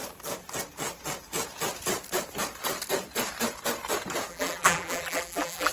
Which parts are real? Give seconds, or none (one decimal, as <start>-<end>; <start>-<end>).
0.0-4.3